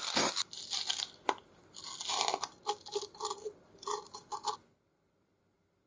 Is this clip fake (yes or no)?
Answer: no